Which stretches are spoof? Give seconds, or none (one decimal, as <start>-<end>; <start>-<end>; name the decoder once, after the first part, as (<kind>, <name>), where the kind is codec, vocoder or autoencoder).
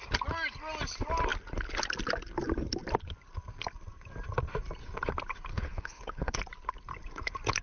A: 5.5-6.4 (codec, HILCodec)